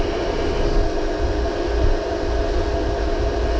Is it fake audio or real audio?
real